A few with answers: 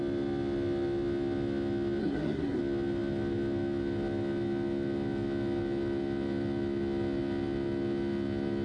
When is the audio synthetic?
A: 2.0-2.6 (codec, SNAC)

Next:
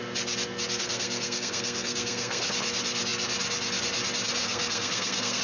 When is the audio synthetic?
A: 0.8-2.5 (codec, SNAC); 4.4-5.4

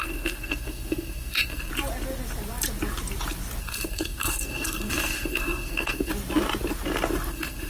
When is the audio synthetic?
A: 0.0-1.7 (codec, SNAC); 3.6-6.1; 7.3-7.7

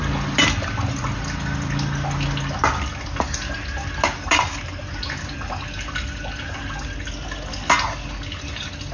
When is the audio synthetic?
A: none

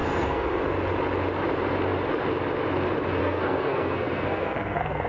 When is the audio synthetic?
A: 0.0-0.6 (codec, SNAC); 3.2-5.1

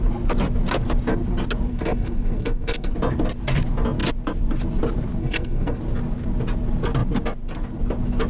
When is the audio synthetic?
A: 1.7-2.9 (codec, SNAC); 5.2-5.8